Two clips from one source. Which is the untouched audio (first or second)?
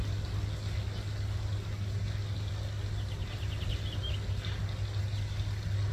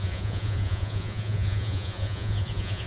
first